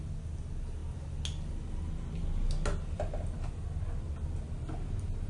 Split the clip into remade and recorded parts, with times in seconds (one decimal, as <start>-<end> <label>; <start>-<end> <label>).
0.0-5.3 recorded